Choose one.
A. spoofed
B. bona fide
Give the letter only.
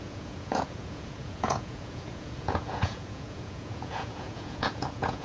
A